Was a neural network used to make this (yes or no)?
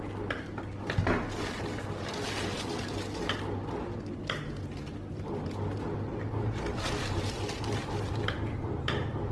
no